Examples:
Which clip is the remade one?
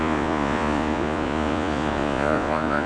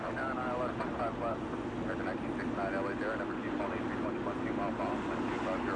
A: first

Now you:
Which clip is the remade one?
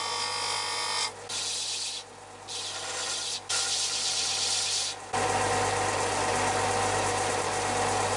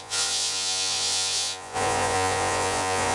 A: second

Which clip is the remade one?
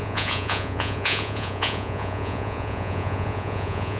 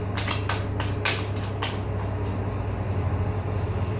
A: first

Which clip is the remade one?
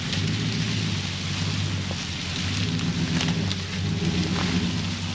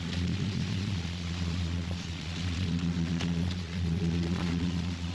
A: second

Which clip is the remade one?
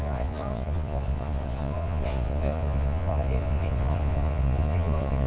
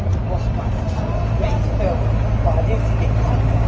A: first